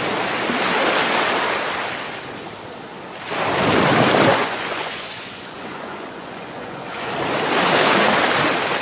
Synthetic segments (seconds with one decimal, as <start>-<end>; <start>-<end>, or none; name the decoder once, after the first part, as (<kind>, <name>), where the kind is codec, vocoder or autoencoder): 4.3-7.1 (vocoder, Vocos)